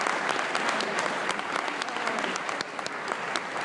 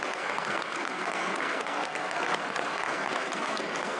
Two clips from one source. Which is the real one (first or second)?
first